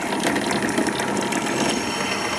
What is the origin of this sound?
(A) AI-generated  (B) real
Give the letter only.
B